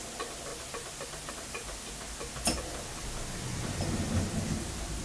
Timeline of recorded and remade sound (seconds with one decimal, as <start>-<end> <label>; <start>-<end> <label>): 0.0-5.0 recorded